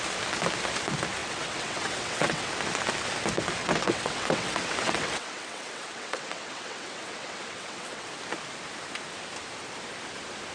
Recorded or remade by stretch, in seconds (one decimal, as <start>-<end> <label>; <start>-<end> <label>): 0.0-1.2 recorded; 1.2-2.5 remade; 2.5-3.6 recorded; 3.6-8.1 remade; 8.1-10.5 recorded